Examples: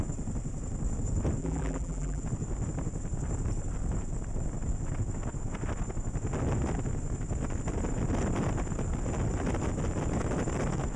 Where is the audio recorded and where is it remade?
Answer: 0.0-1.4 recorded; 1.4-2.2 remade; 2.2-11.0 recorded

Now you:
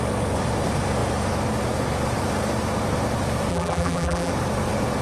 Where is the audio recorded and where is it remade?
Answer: 0.0-3.5 recorded; 3.5-4.3 remade; 4.3-5.0 recorded